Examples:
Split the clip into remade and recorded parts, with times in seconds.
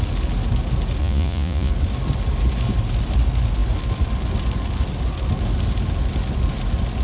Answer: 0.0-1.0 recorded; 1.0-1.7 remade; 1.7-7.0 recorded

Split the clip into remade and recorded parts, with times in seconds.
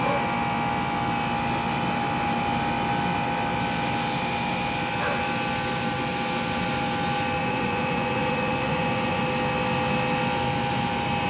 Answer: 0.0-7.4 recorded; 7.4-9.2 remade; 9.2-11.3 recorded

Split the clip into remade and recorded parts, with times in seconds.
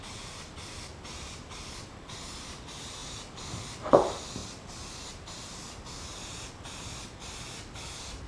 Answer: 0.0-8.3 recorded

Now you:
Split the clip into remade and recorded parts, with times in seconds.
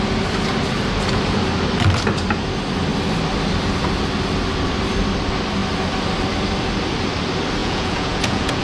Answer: 0.0-7.6 recorded; 7.6-8.6 remade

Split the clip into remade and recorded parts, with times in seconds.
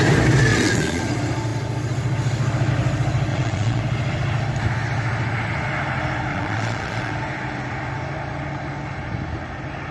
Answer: 0.0-0.5 recorded; 0.5-1.0 remade; 1.0-3.3 recorded; 3.3-3.8 remade; 3.8-6.3 recorded; 6.3-7.1 remade; 7.1-9.9 recorded